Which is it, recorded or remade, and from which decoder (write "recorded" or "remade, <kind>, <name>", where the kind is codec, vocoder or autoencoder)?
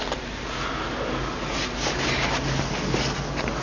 recorded